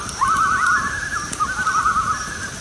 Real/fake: real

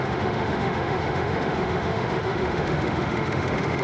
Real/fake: fake